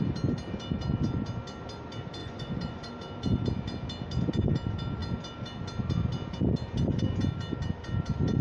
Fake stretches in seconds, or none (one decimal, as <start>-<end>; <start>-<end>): 2.2-2.9